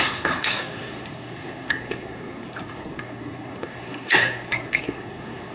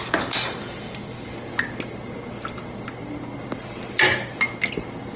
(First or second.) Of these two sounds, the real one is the second